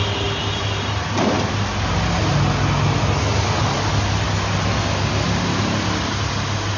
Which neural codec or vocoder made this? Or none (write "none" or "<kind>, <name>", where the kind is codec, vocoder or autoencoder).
none